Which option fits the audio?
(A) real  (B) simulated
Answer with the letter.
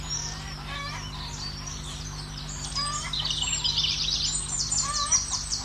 B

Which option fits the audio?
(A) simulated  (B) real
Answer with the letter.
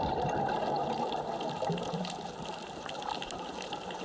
A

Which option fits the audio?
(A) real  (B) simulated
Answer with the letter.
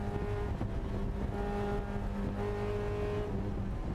A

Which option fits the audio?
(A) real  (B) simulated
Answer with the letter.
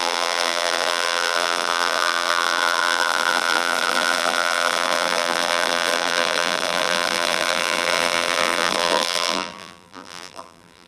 B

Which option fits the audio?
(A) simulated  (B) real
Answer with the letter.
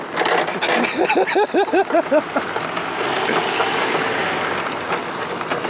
B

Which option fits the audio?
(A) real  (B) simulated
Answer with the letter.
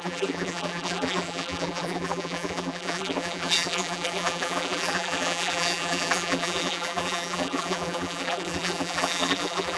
B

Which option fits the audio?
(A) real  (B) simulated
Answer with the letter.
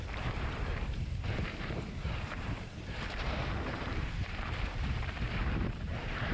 B